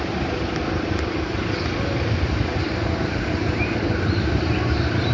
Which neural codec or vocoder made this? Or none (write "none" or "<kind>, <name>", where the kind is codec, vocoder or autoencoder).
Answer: vocoder, BigVGAN v2